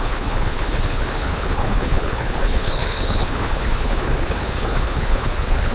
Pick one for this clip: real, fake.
fake